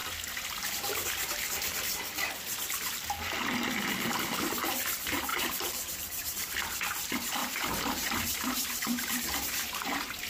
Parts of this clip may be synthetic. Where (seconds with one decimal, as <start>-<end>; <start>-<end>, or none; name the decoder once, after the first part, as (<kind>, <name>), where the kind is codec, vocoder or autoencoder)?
5.3-6.5 (vocoder, BigVGAN v2); 7.4-10.3